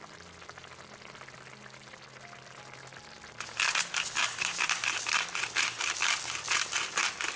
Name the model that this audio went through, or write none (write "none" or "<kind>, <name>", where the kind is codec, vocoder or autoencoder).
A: none